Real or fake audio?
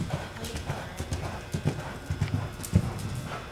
real